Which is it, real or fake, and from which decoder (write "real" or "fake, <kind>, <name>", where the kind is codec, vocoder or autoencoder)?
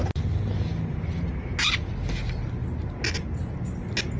real